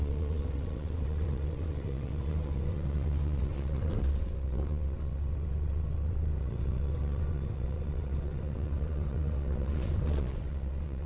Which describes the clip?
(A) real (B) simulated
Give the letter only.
B